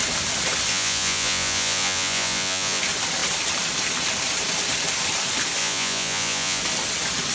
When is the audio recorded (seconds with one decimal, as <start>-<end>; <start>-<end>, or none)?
0.0-0.7; 2.8-5.6; 6.6-7.3